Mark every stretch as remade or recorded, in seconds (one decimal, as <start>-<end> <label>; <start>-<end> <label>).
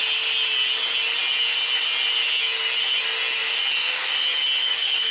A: 0.0-4.6 recorded; 4.6-5.1 remade